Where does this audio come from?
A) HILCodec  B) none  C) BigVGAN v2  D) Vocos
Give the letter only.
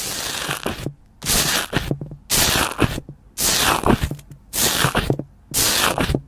B